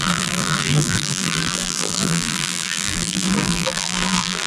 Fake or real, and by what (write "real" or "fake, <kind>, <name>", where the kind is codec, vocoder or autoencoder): fake, vocoder, BigVGAN v2